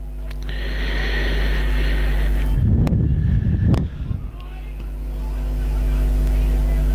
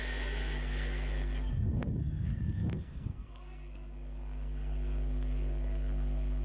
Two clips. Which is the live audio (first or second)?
first